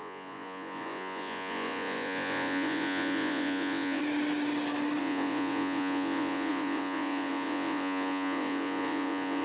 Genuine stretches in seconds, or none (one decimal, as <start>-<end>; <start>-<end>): 4.0-5.0